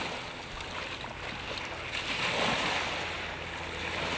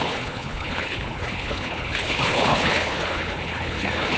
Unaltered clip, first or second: first